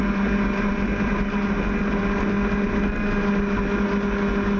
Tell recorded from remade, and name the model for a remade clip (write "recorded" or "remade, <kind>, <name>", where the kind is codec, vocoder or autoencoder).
recorded